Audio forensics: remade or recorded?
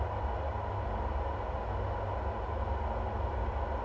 recorded